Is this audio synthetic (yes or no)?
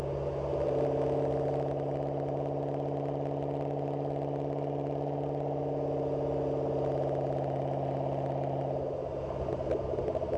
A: no